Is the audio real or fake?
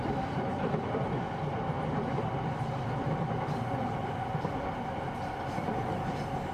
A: real